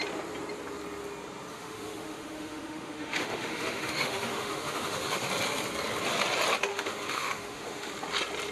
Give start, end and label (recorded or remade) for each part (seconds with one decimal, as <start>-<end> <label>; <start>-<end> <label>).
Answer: 0.0-1.5 recorded; 1.5-5.3 remade; 5.3-6.7 recorded; 6.7-7.9 remade; 7.9-8.5 recorded

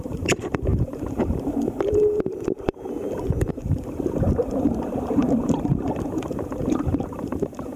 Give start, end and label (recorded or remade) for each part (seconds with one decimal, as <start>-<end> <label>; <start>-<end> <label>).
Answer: 0.0-7.8 remade

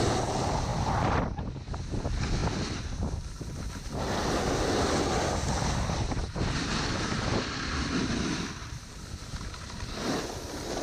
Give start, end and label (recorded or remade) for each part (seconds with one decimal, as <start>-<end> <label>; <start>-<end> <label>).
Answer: 0.0-8.6 recorded; 8.6-9.2 remade; 9.2-10.8 recorded

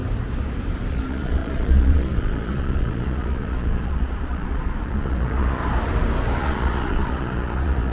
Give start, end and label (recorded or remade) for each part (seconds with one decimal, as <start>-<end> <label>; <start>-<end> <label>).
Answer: 0.0-0.9 recorded; 0.9-5.6 remade; 5.6-6.4 recorded; 6.4-7.9 remade

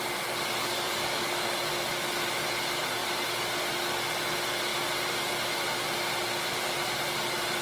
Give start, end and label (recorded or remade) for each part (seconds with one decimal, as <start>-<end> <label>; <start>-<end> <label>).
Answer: 0.0-0.6 recorded; 0.6-1.7 remade; 1.7-7.6 recorded

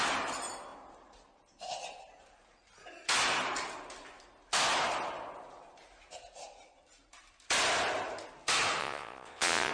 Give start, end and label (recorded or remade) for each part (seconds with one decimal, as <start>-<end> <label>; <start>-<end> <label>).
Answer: 0.0-8.8 recorded; 8.8-9.7 remade